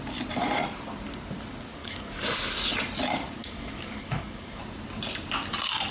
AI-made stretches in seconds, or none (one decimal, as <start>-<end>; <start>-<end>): 1.7-2.2; 3.4-4.6